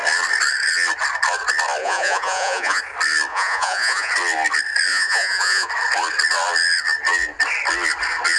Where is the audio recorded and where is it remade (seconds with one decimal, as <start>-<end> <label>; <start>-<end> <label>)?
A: 0.0-1.8 recorded; 1.8-2.8 remade; 2.8-3.3 recorded; 3.3-4.1 remade; 4.1-4.9 recorded; 4.9-5.7 remade; 5.7-8.4 recorded